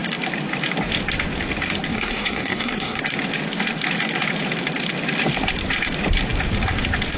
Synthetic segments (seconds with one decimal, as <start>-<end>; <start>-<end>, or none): 1.9-3.0